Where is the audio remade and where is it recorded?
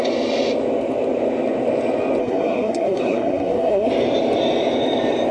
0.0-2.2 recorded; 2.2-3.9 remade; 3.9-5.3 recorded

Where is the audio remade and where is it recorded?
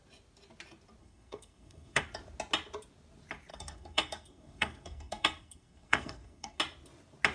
0.0-1.0 recorded; 1.0-2.0 remade; 2.0-3.5 recorded; 3.5-6.6 remade; 6.6-7.3 recorded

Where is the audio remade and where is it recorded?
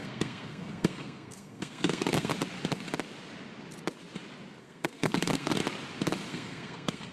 0.0-2.3 remade; 2.3-4.6 recorded; 4.6-5.5 remade; 5.5-6.3 recorded; 6.3-7.1 remade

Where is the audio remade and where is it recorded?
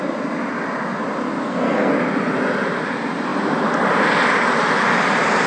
0.0-1.4 recorded; 1.4-1.9 remade; 1.9-5.5 recorded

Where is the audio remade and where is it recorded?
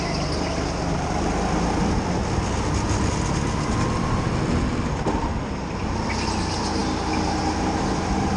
0.0-8.4 recorded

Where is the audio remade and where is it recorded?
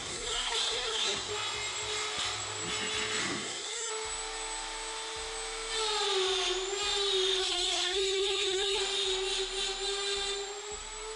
0.0-1.3 remade; 1.3-3.2 recorded; 3.2-3.9 remade; 3.9-7.4 recorded; 7.4-8.8 remade; 8.8-11.2 recorded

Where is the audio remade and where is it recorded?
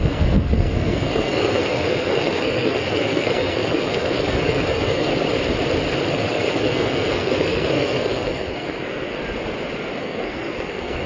0.0-5.1 remade; 5.1-6.1 recorded; 6.1-9.2 remade; 9.2-10.0 recorded; 10.0-11.1 remade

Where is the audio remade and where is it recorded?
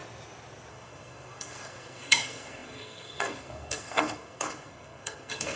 0.0-0.7 recorded; 0.7-5.6 remade